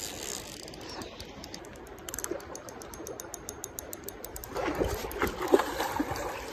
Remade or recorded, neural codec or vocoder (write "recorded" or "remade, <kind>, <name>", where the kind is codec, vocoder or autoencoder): recorded